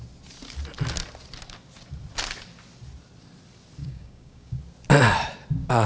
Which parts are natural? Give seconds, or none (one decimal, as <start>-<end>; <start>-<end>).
0.0-3.8; 4.6-5.9